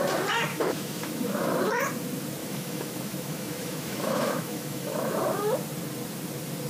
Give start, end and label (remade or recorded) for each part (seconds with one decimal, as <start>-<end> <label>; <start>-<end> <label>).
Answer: 0.0-0.5 recorded; 0.5-1.5 remade; 1.5-2.4 recorded; 2.4-5.2 remade; 5.2-6.7 recorded